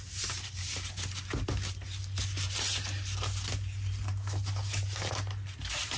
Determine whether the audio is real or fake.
real